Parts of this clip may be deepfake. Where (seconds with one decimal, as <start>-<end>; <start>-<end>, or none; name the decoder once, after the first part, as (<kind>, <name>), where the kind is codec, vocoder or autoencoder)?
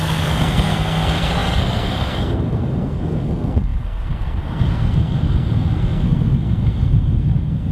0.0-7.7 (codec, SNAC)